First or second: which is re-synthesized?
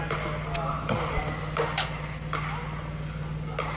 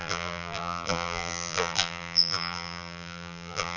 second